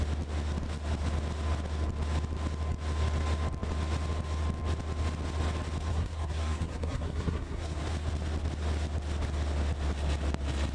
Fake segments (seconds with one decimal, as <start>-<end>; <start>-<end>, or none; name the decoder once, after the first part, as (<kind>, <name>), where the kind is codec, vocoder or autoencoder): 5.9-7.8 (codec, SNAC)